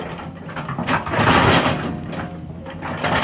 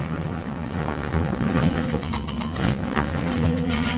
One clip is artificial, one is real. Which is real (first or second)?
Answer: first